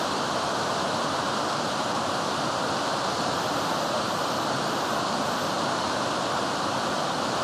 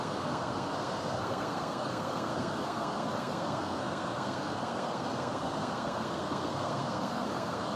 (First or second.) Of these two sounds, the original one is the first